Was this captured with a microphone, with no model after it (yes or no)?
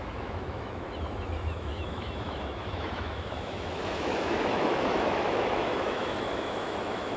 no